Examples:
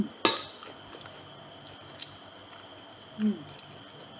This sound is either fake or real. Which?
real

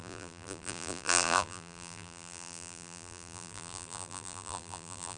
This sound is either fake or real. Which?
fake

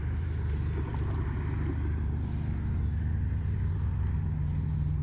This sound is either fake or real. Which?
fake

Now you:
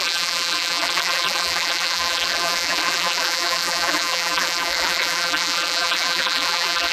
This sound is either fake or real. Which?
fake